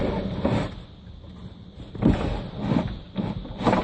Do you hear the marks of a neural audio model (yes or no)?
no